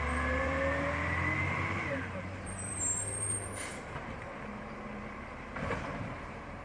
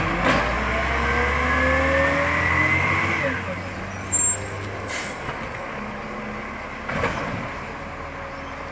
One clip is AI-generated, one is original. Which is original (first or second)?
second